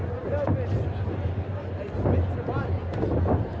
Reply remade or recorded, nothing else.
recorded